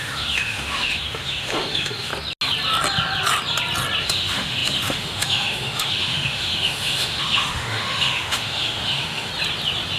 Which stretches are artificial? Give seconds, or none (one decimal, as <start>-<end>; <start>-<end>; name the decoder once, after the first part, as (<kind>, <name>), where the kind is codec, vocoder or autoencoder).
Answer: 0.0-2.1 (autoencoder, DAC-VAE); 4.0-9.3

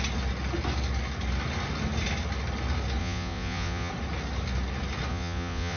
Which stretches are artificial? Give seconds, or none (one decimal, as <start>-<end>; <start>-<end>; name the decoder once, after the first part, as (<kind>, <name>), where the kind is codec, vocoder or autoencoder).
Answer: 3.0-3.9 (vocoder, Vocos); 5.1-5.8

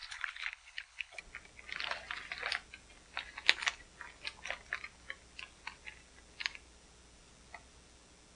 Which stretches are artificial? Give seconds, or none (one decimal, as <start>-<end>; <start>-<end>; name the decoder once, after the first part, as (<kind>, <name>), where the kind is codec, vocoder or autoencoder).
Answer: 0.0-1.2 (codec, HILCodec)

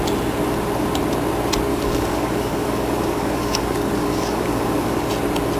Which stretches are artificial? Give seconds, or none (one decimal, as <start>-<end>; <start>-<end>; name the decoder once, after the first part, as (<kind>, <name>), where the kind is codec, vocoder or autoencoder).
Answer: 1.7-5.1 (codec, DAC)

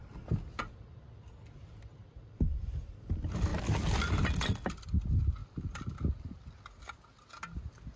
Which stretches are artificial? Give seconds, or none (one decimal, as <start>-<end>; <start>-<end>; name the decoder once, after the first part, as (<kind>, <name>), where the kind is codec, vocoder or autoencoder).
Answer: none

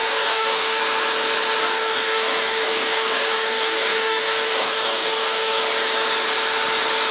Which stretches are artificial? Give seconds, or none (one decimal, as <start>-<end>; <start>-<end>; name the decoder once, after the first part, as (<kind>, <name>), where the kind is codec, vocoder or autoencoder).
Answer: 0.0-0.8 (codec, DAC); 1.6-5.6

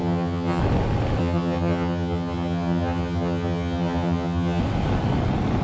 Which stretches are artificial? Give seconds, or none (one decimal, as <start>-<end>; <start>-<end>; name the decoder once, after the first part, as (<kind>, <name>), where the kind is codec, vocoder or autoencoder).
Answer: 0.0-0.6 (vocoder, HiFi-GAN); 1.2-4.6

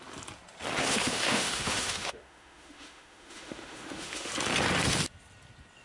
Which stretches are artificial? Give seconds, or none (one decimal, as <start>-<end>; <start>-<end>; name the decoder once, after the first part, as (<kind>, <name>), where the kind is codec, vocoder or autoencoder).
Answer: 0.8-4.3 (autoencoder, DAC-VAE)